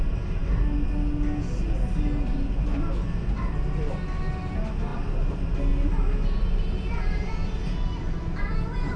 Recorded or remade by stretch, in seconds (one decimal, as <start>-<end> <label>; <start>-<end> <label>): 0.0-9.0 recorded